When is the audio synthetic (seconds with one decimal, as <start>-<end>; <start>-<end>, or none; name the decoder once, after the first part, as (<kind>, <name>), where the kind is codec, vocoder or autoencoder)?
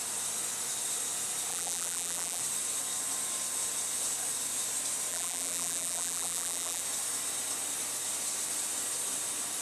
1.5-2.4 (vocoder, BigVGAN v2); 5.1-6.8